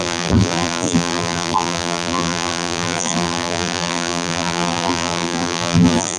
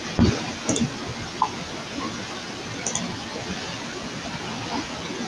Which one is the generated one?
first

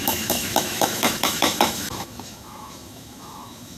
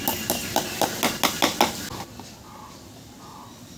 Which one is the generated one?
first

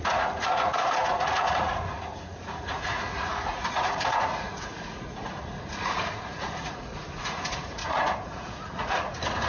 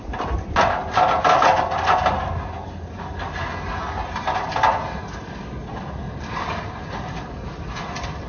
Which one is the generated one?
first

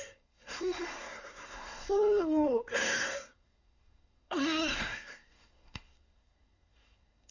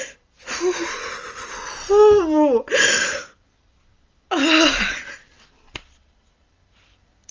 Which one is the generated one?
first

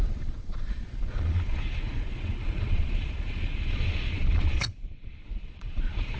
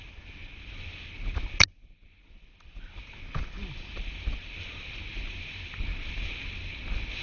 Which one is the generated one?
first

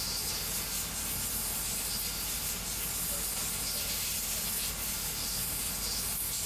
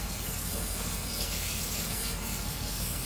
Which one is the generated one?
second